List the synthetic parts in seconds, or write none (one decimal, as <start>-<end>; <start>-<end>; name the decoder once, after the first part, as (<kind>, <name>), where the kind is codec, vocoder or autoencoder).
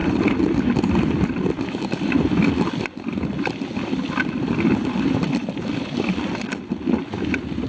none